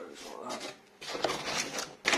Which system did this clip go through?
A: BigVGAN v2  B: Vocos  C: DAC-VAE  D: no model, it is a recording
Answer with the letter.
D